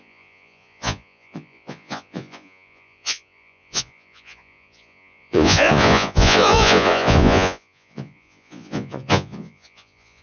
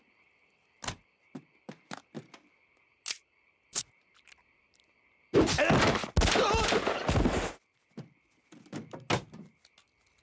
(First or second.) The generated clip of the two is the first